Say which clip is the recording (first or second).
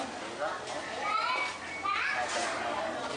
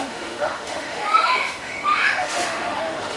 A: first